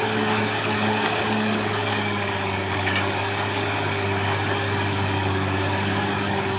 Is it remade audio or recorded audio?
remade